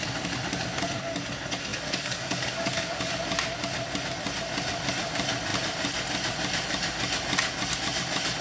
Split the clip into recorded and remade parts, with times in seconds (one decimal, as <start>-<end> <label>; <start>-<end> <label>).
0.0-1.7 recorded; 1.7-3.1 remade; 3.1-8.4 recorded